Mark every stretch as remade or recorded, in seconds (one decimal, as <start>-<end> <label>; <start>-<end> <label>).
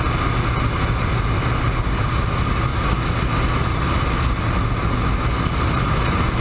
0.0-6.4 recorded